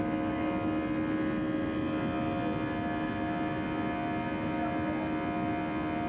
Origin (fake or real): real